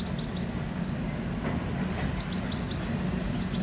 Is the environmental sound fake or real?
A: real